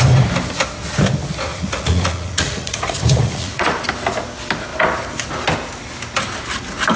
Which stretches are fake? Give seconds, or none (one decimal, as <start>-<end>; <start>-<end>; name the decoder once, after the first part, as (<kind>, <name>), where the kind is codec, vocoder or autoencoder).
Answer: 1.5-3.8 (vocoder, Vocos)